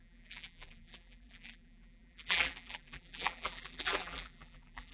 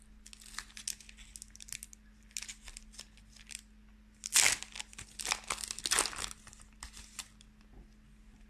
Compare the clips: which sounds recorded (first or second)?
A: second